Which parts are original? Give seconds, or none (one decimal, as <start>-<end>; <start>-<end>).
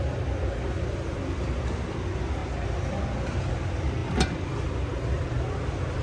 0.0-6.0